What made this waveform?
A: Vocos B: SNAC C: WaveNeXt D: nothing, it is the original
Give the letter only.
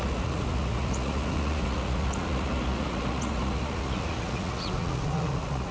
A